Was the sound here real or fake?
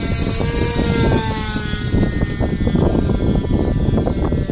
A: real